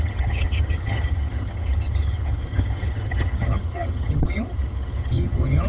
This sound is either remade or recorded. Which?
remade